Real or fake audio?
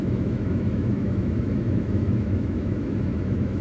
fake